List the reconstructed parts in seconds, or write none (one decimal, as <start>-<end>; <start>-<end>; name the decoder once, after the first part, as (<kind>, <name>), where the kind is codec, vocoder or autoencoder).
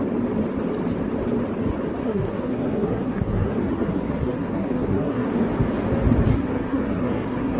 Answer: 2.0-5.3 (codec, SNAC); 6.3-7.6